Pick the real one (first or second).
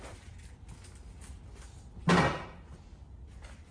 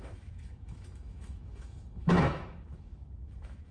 first